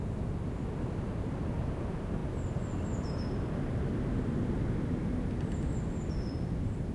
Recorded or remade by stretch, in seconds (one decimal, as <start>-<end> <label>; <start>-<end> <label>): 0.0-6.9 recorded

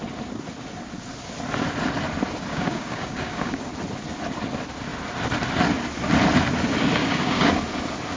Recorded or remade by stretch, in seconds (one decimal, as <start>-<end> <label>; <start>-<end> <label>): 0.0-2.5 recorded; 2.5-3.7 remade; 3.7-7.0 recorded; 7.0-7.6 remade; 7.6-8.2 recorded

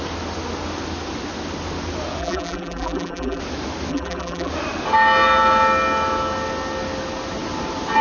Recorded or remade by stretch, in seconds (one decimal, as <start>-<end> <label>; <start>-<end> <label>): 0.0-2.2 recorded; 2.2-3.4 remade; 3.4-3.9 recorded; 3.9-4.5 remade; 4.5-8.0 recorded

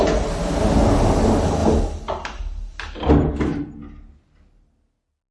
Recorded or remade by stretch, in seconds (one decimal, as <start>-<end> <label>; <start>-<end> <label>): 0.0-5.3 recorded

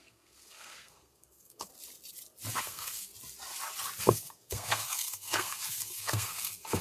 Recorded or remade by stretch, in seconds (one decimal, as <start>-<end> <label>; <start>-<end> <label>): 0.0-1.7 remade; 1.7-2.6 recorded; 2.6-3.1 remade; 3.1-4.0 recorded; 4.0-6.8 remade

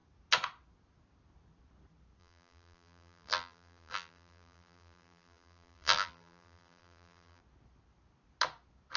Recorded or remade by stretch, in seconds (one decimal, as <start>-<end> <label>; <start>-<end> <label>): 0.0-2.2 recorded; 2.2-7.4 remade; 7.4-9.0 recorded

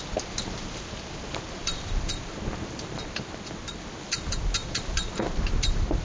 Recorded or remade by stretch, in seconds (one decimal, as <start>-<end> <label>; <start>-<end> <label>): 0.0-1.7 remade; 1.7-3.6 recorded; 3.6-6.0 remade